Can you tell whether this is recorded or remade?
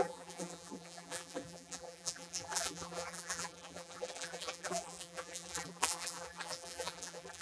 remade